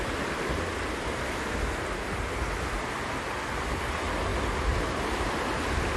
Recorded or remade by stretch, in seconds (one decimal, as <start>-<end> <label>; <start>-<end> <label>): 0.0-6.0 recorded